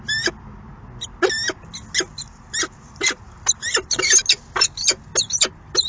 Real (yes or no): yes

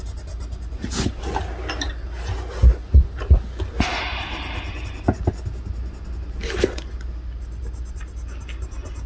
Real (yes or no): yes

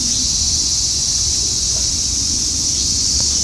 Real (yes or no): no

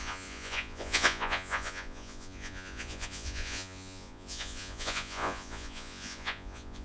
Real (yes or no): no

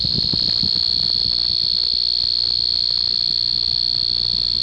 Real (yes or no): yes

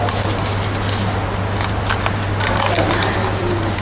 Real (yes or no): yes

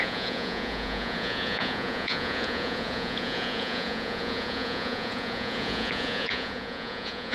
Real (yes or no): no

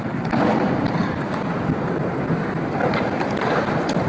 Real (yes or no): yes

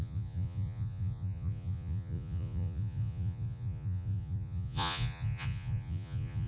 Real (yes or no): no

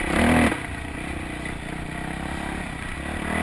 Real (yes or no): yes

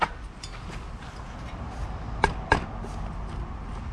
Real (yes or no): yes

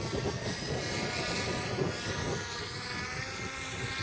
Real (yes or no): yes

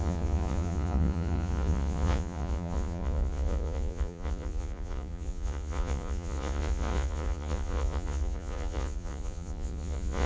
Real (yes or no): no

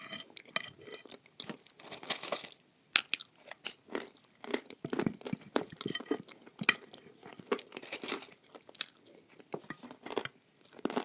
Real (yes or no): yes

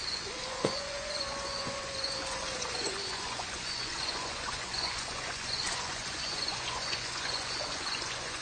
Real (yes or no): no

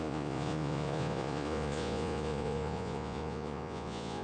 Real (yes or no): no